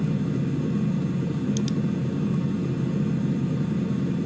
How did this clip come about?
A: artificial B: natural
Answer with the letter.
B